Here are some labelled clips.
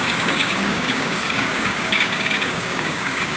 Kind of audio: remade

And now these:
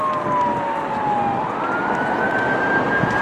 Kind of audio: recorded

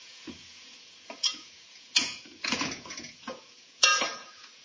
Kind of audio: remade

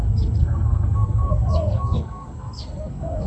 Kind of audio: remade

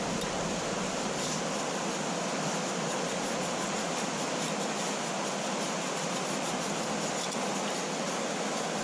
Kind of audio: recorded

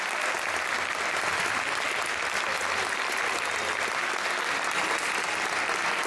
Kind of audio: recorded